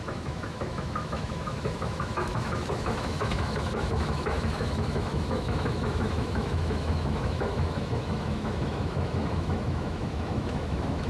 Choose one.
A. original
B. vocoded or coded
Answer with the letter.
B